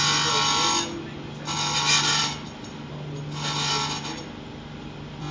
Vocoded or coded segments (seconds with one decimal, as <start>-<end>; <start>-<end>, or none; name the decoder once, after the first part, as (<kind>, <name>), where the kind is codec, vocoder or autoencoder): none